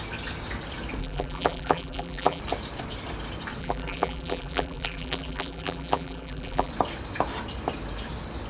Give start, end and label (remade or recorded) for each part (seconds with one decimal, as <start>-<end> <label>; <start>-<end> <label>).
0.0-1.0 recorded; 1.0-2.4 remade; 2.4-3.6 recorded; 3.6-6.7 remade; 6.7-8.5 recorded